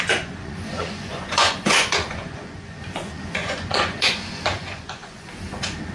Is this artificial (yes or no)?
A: yes